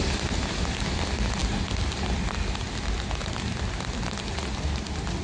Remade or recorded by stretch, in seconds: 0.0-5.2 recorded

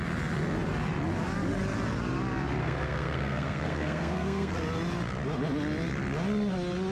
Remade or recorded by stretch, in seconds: 0.0-2.6 recorded; 2.6-4.5 remade; 4.5-6.9 recorded

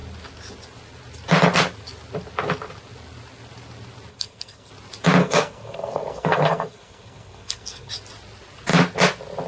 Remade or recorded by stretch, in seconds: 0.0-4.1 recorded; 4.1-4.7 remade; 4.7-5.2 recorded; 5.2-7.9 remade; 7.9-9.5 recorded

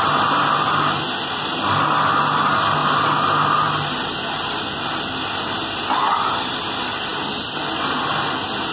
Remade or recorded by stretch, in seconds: 0.0-8.7 recorded